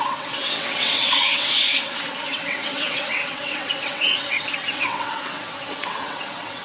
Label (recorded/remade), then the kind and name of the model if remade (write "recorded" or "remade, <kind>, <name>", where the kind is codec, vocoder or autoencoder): remade, vocoder, WaveNeXt